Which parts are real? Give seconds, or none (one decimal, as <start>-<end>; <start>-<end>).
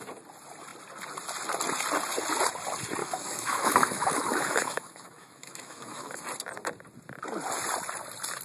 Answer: 0.0-3.0; 6.2-8.4